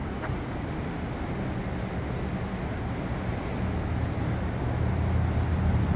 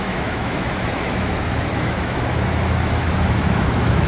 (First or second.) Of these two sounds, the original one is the first